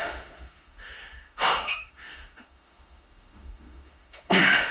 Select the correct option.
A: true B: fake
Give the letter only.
B